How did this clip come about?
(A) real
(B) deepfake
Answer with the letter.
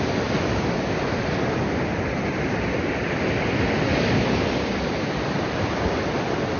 A